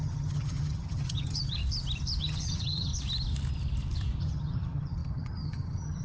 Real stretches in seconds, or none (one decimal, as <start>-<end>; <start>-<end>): 1.6-2.2; 2.9-4.2

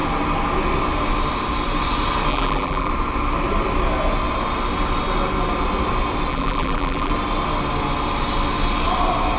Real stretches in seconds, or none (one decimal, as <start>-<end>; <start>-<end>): 0.0-2.3; 2.9-6.3; 7.1-9.4

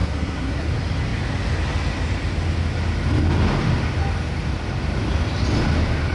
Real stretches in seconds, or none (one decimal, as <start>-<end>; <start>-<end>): 0.7-6.1

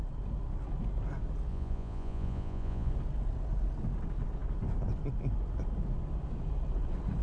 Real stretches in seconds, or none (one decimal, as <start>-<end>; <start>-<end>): 0.0-1.5; 2.9-7.2